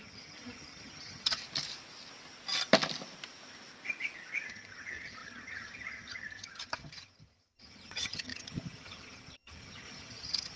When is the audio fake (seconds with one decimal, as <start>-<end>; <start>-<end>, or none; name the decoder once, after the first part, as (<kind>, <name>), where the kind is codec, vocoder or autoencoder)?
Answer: 0.0-1.4 (vocoder, HiFi-GAN); 4.5-10.6

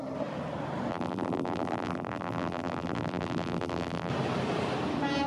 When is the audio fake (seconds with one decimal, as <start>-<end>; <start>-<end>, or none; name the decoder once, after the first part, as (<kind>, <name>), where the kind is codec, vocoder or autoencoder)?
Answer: 0.9-4.1 (vocoder, BigVGAN v2)

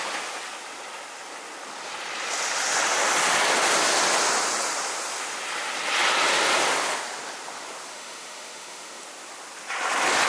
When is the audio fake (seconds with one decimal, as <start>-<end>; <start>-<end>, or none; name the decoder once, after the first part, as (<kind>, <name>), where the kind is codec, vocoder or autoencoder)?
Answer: 7.9-9.0 (autoencoder, DAC-VAE)

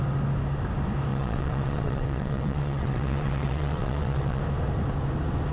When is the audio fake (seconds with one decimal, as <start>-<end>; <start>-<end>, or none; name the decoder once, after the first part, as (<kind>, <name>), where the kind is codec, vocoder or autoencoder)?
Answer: 1.1-4.4 (vocoder, WaveNeXt)